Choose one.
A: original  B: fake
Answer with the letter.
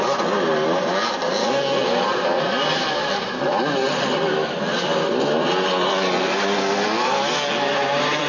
A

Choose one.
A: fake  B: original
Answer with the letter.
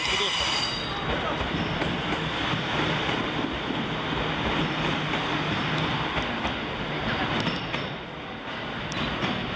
B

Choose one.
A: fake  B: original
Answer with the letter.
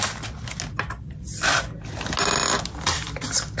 B